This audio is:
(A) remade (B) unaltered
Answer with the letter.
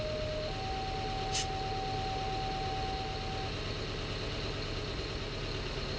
B